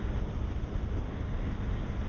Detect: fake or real real